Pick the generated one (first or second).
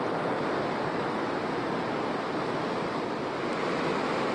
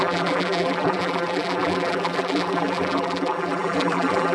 second